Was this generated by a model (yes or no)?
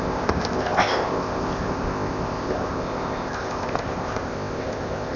yes